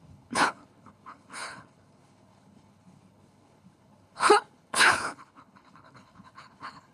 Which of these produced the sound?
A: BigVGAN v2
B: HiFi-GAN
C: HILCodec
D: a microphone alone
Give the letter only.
C